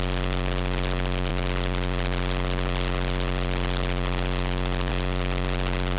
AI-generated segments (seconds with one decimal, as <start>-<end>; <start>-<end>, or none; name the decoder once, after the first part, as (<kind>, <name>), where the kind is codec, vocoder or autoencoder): none